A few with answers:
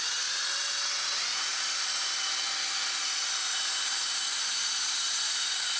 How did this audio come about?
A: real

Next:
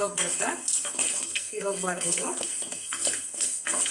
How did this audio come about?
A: fake